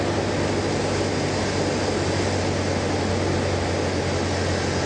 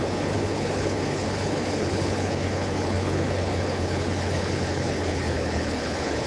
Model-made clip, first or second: second